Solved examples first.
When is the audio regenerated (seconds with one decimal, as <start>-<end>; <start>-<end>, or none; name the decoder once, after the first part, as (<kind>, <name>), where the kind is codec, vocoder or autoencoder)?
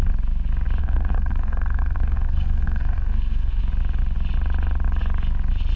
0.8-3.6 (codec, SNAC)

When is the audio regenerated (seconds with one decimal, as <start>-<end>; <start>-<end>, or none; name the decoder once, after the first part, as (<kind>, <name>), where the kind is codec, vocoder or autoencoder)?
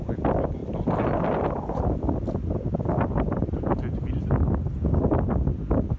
none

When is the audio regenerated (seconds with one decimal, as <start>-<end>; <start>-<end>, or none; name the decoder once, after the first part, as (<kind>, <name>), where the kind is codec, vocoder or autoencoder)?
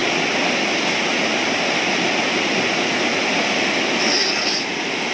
none